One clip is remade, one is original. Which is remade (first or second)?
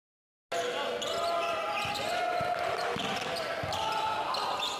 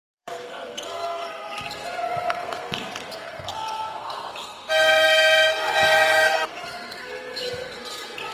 second